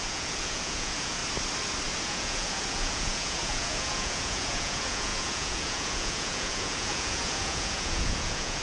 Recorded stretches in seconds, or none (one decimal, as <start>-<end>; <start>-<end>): 1.2-2.0